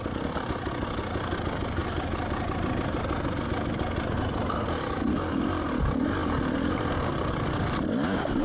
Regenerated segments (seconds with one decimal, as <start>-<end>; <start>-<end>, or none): none